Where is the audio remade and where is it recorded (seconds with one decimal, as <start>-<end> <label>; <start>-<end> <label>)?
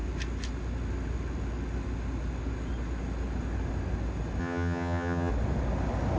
0.0-4.4 recorded; 4.4-5.3 remade; 5.3-6.2 recorded